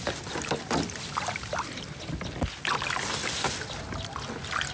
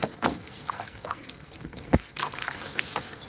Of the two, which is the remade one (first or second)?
second